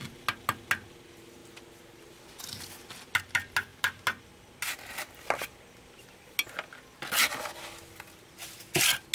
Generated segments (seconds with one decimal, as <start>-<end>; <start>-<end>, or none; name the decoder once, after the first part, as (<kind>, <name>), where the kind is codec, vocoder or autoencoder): none